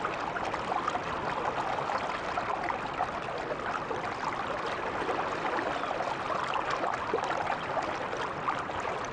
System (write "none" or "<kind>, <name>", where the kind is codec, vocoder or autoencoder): none